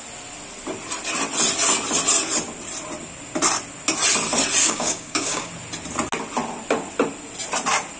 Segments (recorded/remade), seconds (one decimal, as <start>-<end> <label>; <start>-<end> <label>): 0.0-4.6 recorded; 4.6-5.5 remade; 5.5-8.0 recorded